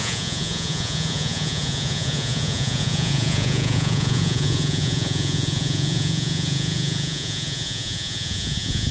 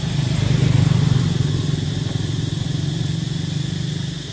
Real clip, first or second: second